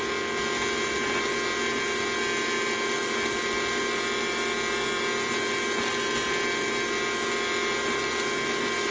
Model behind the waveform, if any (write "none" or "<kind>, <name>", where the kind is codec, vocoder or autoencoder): none